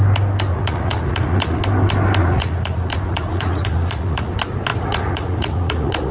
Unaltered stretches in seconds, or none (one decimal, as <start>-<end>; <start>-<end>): 0.0-0.5; 1.6-2.2; 4.3-4.7